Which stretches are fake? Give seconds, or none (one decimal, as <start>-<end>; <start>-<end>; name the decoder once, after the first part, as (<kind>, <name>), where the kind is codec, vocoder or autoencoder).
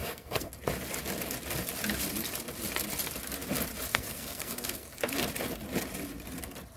0.0-0.5 (codec, SNAC); 3.9-5.0